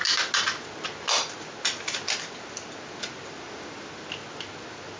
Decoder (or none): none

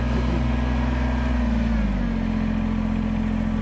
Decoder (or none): none